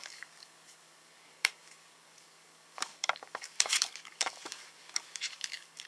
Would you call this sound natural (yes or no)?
no